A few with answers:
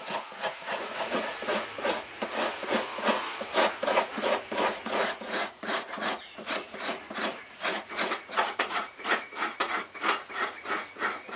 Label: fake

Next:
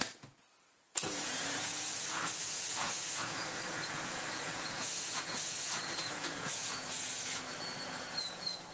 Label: fake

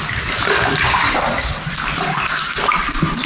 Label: real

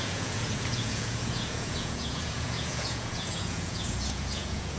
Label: fake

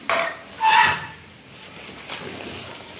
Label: real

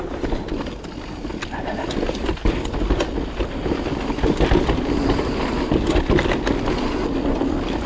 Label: real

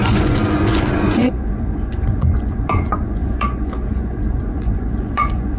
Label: fake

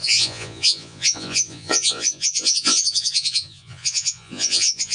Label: fake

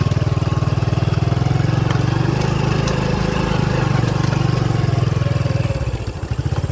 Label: real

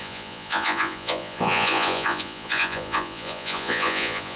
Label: fake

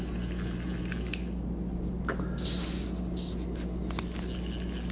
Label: real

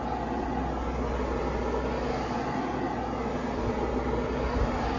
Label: real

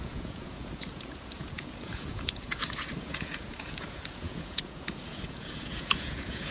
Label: fake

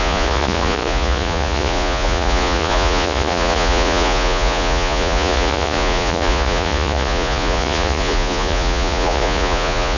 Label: fake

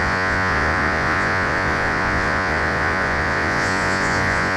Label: fake